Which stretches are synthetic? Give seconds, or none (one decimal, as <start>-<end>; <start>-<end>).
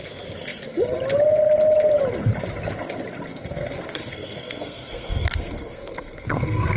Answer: 3.3-6.8